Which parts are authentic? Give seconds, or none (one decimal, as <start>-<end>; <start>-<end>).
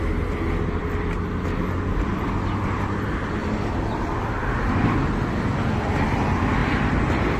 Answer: 0.0-6.6